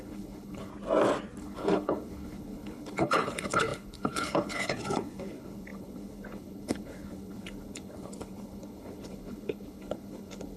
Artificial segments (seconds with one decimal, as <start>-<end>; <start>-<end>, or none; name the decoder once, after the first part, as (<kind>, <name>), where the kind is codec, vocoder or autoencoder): 0.0-0.7 (codec, HILCodec); 1.4-10.6